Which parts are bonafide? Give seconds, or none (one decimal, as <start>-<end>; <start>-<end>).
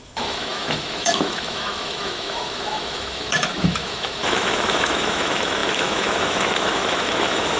none